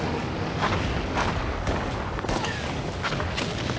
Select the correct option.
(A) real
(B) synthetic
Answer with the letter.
B